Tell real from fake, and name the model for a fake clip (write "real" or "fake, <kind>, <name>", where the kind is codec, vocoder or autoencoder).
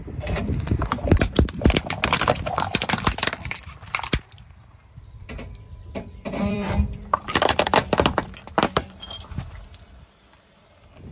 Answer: fake, vocoder, BigVGAN v2